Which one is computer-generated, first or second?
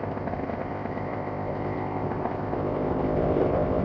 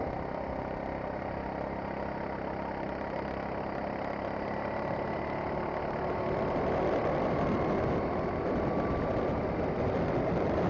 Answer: first